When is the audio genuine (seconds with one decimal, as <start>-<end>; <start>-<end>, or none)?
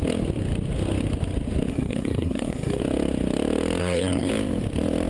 0.0-1.7; 2.8-3.8; 4.3-5.1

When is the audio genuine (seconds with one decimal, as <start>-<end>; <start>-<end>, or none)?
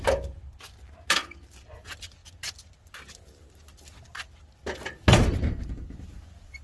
0.0-6.6